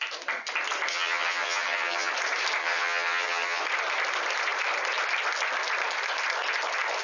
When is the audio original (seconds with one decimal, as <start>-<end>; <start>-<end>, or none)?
0.0-0.9; 2.1-2.6; 3.6-7.0